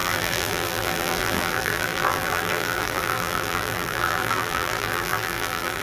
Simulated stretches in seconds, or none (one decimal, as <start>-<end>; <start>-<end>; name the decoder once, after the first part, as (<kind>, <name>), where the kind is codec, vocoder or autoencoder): 0.0-5.8 (vocoder, BigVGAN v2)